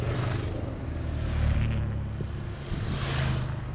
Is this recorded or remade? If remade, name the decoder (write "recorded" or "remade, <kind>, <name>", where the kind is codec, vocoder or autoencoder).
recorded